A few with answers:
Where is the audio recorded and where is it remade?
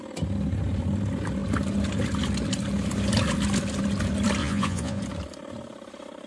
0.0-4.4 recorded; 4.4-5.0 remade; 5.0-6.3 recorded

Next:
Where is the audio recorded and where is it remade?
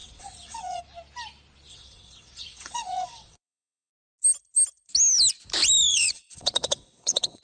0.0-0.8 remade; 0.8-1.7 recorded; 1.7-3.9 remade; 3.9-5.9 recorded; 5.9-7.4 remade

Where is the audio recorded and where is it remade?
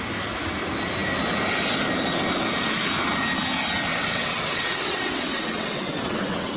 0.0-3.9 recorded; 3.9-6.6 remade